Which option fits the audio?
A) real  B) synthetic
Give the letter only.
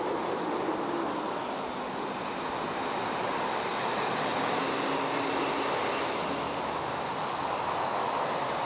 A